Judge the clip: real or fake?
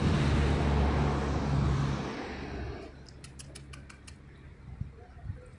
real